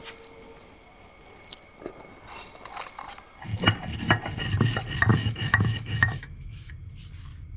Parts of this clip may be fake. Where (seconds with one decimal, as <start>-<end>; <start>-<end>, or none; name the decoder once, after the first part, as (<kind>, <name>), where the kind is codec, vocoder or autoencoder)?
5.1-6.7 (autoencoder, DAC-VAE)